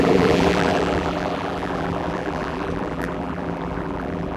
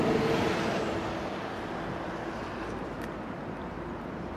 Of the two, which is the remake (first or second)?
first